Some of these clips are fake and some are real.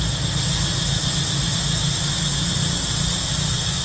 real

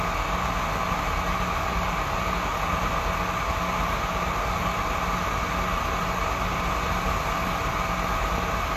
real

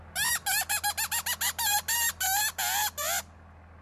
real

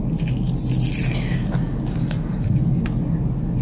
real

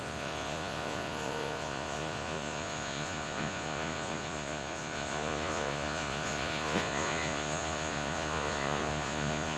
fake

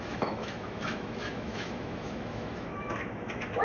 fake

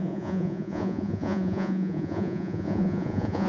fake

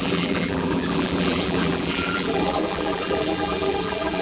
fake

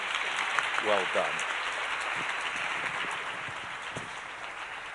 real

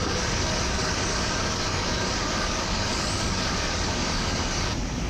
fake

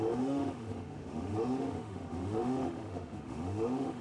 fake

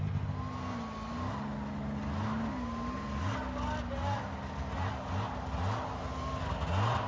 real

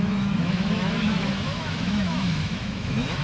fake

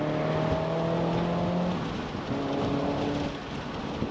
real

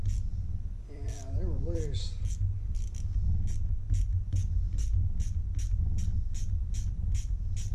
real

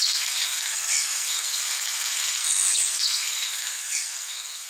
fake